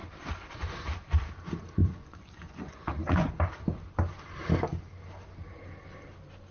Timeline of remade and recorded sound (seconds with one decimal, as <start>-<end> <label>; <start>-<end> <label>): 0.0-1.8 recorded; 1.8-3.3 remade; 3.3-6.5 recorded